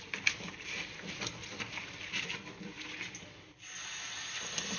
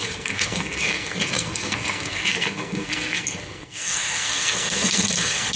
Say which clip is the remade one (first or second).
second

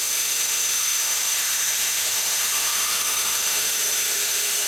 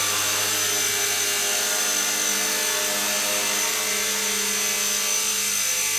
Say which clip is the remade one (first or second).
first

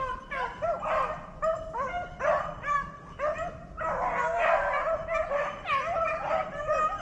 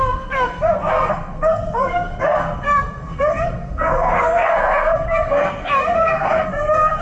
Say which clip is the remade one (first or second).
second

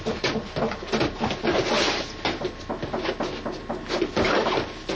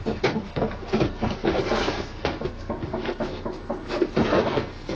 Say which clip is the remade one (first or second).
second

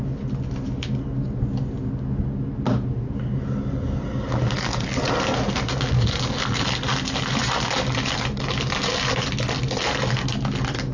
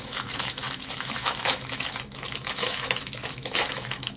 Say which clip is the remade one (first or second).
second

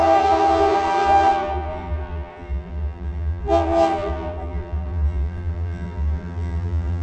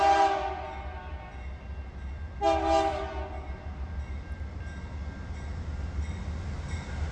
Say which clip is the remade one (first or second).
first